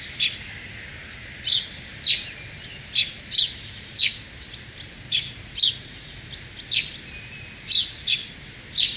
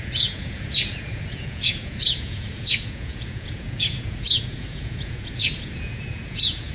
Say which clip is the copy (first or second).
second